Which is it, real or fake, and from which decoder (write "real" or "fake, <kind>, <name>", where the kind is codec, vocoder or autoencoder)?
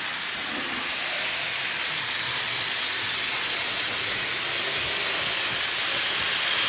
real